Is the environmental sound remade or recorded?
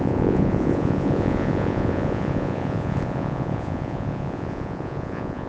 remade